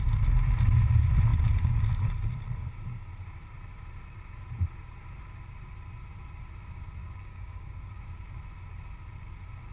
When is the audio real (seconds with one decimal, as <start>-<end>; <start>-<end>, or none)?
0.0-7.0; 8.0-9.7